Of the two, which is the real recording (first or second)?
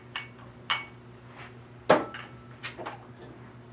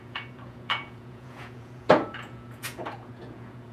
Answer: first